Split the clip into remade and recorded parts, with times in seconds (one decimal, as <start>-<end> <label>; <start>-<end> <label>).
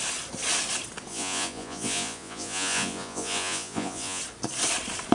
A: 0.0-1.1 recorded; 1.1-4.2 remade; 4.2-5.1 recorded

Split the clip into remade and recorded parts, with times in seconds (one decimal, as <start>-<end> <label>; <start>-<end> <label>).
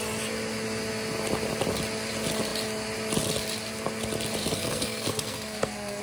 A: 0.0-4.4 recorded; 4.4-6.0 remade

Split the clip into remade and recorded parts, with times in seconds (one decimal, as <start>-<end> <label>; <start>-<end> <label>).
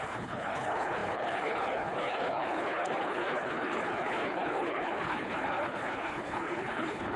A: 0.0-7.2 remade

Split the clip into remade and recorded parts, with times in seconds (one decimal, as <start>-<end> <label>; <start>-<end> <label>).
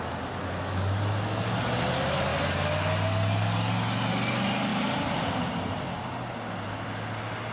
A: 0.0-7.5 recorded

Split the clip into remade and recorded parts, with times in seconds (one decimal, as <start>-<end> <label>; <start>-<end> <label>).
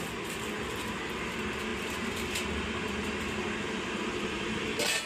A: 0.0-5.1 recorded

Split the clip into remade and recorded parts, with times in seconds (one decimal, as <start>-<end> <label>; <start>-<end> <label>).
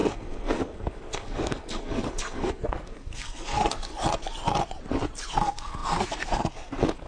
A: 0.0-3.9 remade; 3.9-5.3 recorded; 5.3-7.1 remade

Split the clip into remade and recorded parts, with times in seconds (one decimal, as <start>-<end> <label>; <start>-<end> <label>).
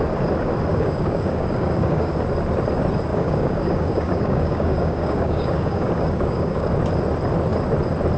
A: 0.0-0.7 recorded; 0.7-2.1 remade; 2.1-3.1 recorded; 3.1-6.7 remade; 6.7-8.2 recorded